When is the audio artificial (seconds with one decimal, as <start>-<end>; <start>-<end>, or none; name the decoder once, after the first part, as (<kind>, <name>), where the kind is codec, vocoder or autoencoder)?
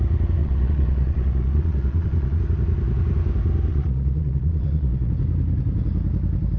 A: 0.4-2.4 (vocoder, Vocos); 3.7-5.1